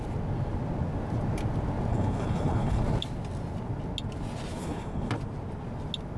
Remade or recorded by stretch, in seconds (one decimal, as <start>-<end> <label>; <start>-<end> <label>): 0.0-1.9 recorded; 1.9-2.8 remade; 2.8-4.6 recorded; 4.6-5.1 remade; 5.1-6.2 recorded